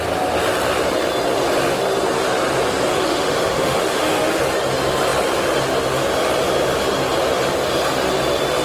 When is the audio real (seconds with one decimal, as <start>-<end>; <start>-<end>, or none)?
0.0-2.9; 4.4-8.6